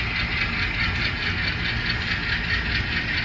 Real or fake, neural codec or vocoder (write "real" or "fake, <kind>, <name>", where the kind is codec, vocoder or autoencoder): real